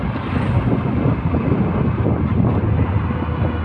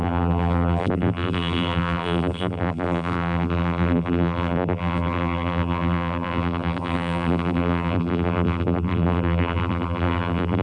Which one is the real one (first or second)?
first